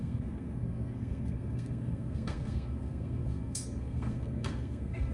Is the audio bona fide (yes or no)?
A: no